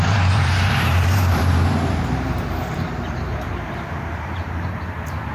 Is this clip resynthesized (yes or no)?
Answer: yes